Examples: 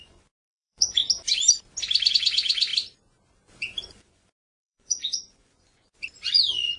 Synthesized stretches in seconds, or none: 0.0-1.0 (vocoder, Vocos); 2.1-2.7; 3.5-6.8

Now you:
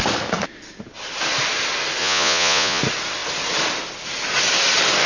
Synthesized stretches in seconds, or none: 2.0-2.8 (vocoder, Vocos)

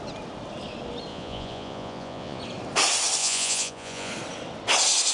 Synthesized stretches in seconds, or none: 1.1-2.4 (vocoder, Vocos); 3.2-4.1

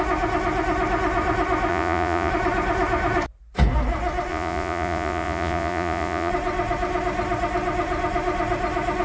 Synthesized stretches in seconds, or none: 1.7-2.3 (vocoder, Vocos); 4.3-6.3

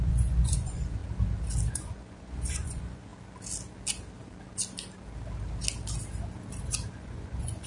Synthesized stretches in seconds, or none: 0.0-1.0 (vocoder, Vocos); 1.7-3.1; 6.9-7.7

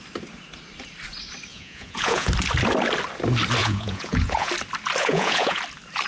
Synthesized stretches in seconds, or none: 1.5-2.3 (vocoder, Vocos); 3.6-4.5; 5.0-5.6